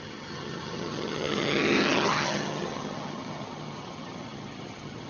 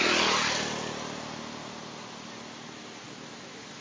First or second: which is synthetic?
first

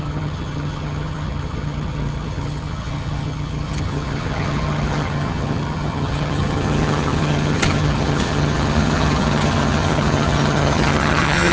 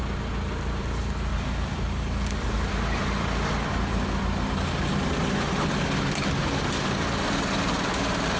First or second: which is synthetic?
first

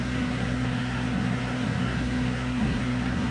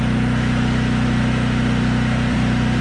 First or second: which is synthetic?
first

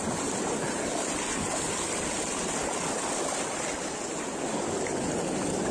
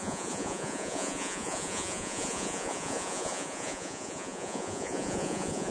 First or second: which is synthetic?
second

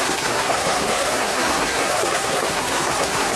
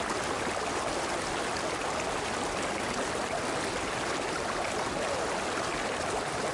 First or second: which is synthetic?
first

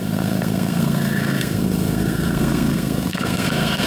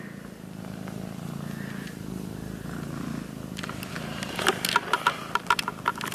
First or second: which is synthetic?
first